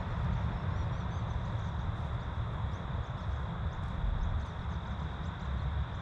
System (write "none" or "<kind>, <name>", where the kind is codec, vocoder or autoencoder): none